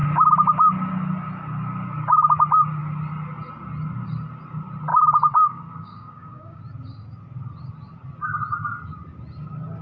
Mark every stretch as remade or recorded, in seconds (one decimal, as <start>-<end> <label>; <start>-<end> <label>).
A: 0.0-4.9 recorded; 4.9-6.6 remade; 6.6-9.8 recorded

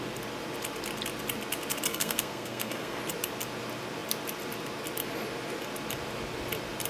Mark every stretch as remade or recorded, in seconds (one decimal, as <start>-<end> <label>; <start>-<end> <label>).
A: 0.0-1.9 recorded; 1.9-3.0 remade; 3.0-6.9 recorded

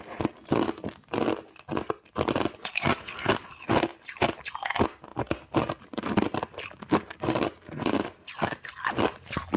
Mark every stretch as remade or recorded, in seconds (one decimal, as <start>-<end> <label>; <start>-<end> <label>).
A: 0.0-9.6 recorded